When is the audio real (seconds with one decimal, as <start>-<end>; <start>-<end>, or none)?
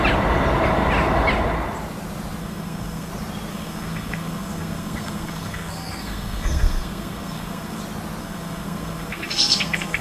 0.0-2.4; 3.1-3.5; 7.8-8.2